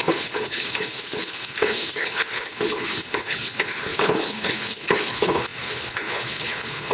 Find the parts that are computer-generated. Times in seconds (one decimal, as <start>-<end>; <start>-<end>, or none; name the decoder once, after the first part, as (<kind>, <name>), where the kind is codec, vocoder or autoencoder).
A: 0.0-6.9 (codec, HILCodec)